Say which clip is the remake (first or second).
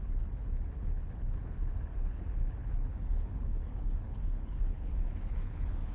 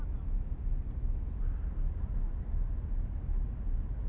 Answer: first